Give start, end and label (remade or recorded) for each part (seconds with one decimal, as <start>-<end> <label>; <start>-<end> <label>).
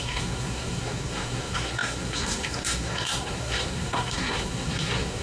0.0-5.2 remade